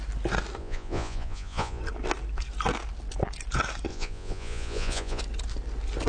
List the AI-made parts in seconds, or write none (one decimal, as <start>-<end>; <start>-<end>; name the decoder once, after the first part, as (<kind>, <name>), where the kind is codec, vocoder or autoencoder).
0.6-1.8 (vocoder, Vocos); 3.9-5.2